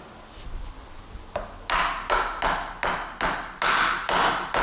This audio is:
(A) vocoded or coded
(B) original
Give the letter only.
B